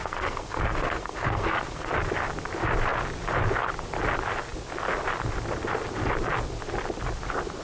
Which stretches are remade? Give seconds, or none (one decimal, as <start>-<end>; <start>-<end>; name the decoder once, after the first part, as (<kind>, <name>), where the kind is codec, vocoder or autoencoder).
0.0-1.9 (codec, SNAC)